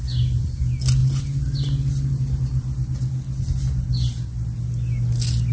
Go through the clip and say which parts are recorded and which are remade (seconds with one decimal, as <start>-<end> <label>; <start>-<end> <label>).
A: 0.0-5.5 recorded